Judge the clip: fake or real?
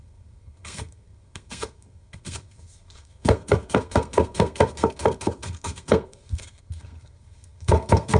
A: fake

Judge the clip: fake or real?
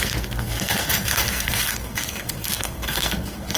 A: fake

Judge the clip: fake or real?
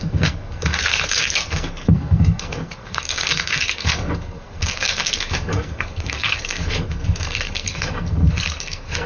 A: fake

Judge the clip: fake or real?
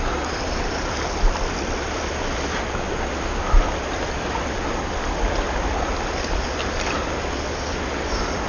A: real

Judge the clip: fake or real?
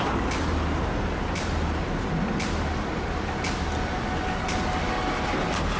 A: real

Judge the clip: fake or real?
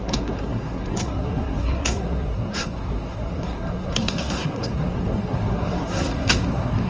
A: fake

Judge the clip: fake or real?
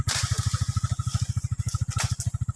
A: real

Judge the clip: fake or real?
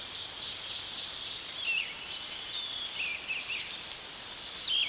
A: real